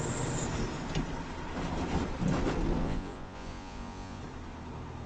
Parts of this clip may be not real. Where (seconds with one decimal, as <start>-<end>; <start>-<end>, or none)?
2.8-4.2